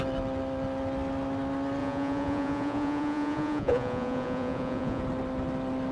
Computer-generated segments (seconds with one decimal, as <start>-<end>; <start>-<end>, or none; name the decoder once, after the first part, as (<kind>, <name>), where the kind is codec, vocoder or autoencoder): 1.8-5.0 (vocoder, Vocos)